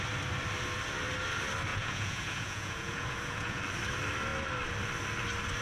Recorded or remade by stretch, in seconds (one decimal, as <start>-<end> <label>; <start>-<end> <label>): 0.0-1.7 recorded; 1.7-3.6 remade; 3.6-5.6 recorded